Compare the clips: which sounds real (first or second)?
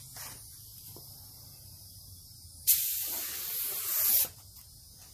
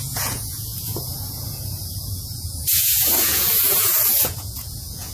first